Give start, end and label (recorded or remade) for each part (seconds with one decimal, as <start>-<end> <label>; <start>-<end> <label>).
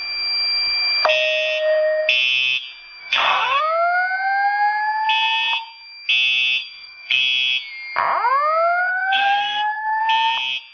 0.0-3.0 recorded; 3.0-3.6 remade; 3.6-6.6 recorded; 6.6-7.2 remade; 7.2-8.9 recorded; 8.9-10.0 remade; 10.0-10.7 recorded